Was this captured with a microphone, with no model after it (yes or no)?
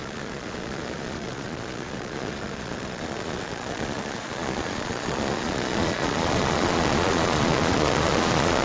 no